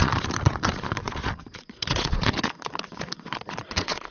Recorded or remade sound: remade